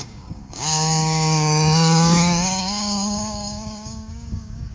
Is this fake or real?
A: fake